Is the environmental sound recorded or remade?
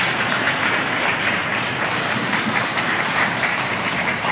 remade